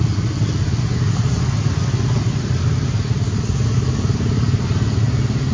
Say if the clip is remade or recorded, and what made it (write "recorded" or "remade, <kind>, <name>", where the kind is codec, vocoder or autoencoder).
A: recorded